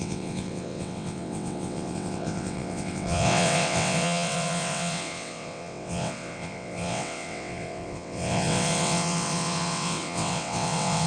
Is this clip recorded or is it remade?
remade